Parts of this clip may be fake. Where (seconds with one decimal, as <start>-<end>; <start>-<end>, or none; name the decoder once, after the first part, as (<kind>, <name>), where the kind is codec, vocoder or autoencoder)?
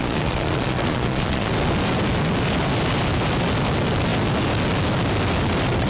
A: 0.0-1.5 (vocoder, Vocos)